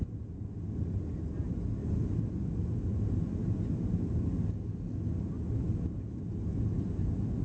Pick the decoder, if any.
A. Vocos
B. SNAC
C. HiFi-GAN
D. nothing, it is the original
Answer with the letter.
D